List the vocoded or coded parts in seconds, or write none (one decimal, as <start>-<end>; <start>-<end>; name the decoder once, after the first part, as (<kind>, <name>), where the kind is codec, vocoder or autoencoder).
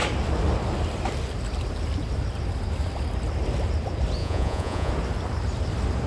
4.2-4.9 (vocoder, Vocos)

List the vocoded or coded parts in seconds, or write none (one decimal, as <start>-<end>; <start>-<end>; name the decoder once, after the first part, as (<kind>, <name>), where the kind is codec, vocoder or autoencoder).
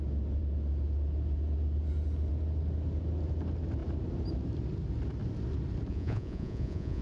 5.9-7.0 (vocoder, Vocos)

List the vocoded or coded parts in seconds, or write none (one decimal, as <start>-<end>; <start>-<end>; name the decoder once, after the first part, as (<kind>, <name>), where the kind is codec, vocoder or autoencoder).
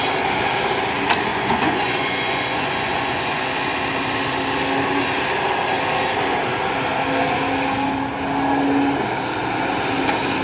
1.3-3.5 (vocoder, Vocos)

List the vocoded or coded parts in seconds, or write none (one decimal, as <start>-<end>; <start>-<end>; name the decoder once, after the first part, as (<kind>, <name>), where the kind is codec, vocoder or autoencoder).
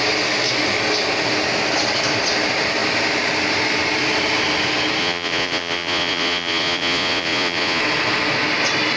5.0-7.8 (vocoder, Vocos)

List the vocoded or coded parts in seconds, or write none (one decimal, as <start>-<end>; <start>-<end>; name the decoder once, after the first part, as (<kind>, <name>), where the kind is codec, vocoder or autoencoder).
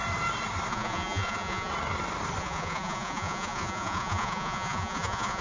0.7-1.7 (vocoder, Vocos); 2.4-5.4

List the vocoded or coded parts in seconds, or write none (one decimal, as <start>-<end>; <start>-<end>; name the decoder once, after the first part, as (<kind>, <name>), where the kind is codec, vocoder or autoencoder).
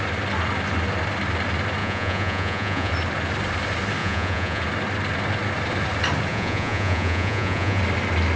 1.8-2.9 (vocoder, Vocos); 4.0-4.6; 6.3-7.8